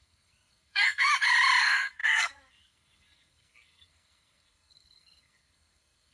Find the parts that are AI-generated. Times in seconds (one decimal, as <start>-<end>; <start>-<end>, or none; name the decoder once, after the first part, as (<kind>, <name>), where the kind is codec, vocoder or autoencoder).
0.0-1.1 (codec, SNAC); 1.6-6.1